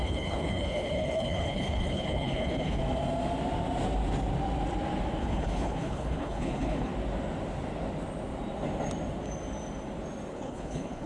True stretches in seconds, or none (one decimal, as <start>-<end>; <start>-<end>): 2.8-5.2; 6.9-10.3